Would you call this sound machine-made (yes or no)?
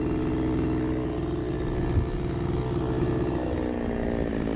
no